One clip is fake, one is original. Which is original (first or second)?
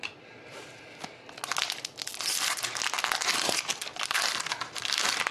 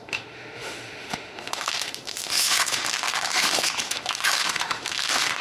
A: first